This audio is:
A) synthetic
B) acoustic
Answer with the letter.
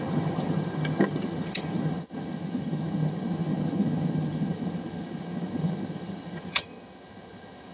A